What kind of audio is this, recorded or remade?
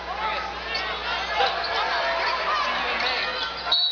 recorded